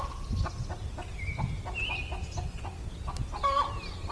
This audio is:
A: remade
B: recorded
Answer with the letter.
B